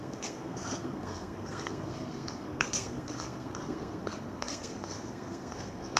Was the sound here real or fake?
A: fake